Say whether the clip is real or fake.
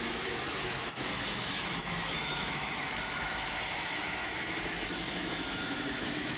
fake